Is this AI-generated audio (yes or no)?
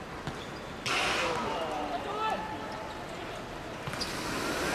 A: no